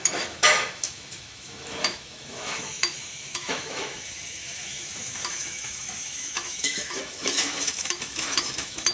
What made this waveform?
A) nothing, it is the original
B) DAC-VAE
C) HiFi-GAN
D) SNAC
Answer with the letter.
B